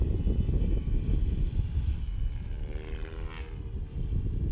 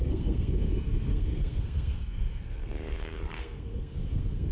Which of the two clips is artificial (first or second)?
second